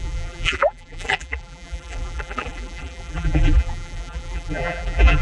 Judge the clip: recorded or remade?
remade